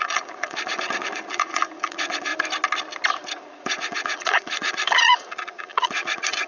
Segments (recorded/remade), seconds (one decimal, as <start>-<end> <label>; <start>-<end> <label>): 0.0-2.3 remade; 2.3-3.4 recorded; 3.4-6.5 remade

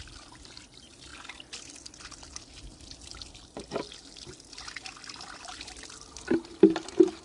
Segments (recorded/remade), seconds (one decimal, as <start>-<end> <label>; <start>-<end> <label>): 0.0-7.2 recorded

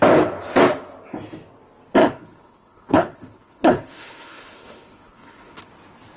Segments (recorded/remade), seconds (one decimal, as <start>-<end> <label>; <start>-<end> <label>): 0.0-2.0 recorded; 2.0-5.7 remade; 5.7-6.2 recorded

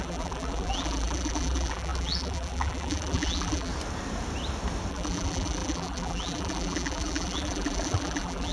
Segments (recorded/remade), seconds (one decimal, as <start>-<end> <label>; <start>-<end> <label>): 0.0-3.7 remade; 3.7-4.9 recorded; 4.9-8.5 remade

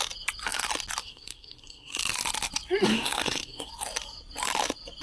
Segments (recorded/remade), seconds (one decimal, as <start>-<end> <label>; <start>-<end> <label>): 0.0-1.0 recorded; 1.0-2.0 remade; 2.0-2.9 recorded; 2.9-3.7 remade; 3.7-5.0 recorded